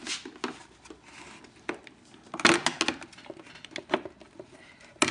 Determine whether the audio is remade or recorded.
recorded